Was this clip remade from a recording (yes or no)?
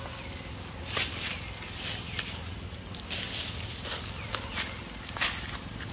no